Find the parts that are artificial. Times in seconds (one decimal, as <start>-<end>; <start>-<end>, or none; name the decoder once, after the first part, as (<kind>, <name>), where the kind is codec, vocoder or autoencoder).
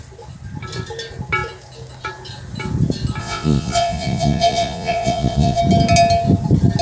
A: 3.2-5.6 (vocoder, Vocos)